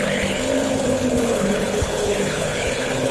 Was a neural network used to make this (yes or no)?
yes